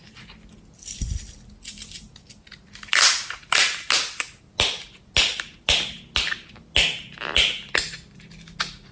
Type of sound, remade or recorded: recorded